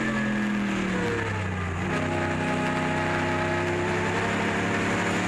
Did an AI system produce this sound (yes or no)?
no